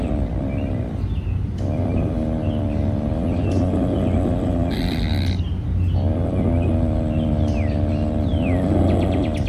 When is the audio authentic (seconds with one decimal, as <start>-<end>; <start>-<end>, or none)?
0.0-9.5